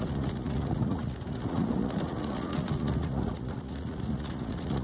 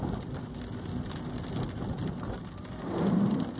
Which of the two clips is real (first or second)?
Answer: second